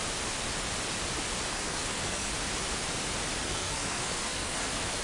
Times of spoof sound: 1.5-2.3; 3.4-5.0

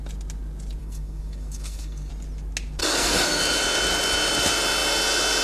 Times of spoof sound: 0.8-2.1; 2.8-3.4